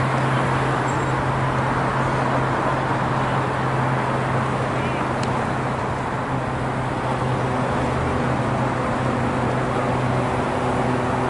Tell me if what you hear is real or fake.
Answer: real